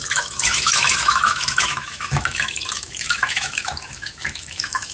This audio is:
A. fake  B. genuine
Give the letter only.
A